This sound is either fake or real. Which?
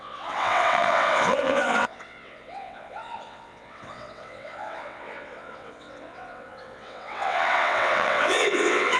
fake